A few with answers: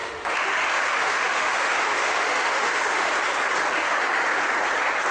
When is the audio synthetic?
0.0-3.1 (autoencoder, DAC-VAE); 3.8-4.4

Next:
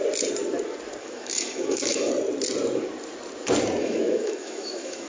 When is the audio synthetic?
1.0-2.1 (autoencoder, DAC-VAE); 3.8-5.1

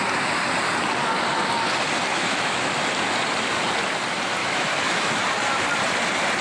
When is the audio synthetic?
2.1-2.7 (autoencoder, DAC-VAE); 4.4-5.2

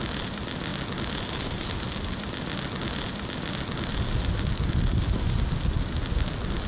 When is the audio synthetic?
none